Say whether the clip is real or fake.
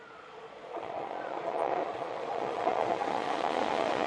fake